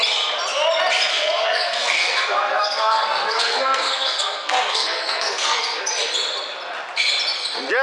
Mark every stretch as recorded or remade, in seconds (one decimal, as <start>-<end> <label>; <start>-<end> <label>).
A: 0.0-1.1 recorded; 1.1-5.8 remade; 5.8-7.8 recorded